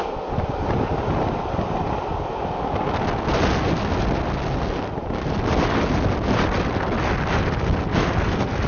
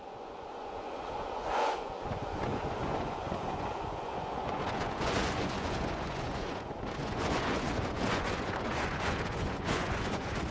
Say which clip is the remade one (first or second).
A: second